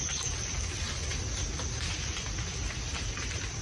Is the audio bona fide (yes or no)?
yes